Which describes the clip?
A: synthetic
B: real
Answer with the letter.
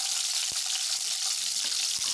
B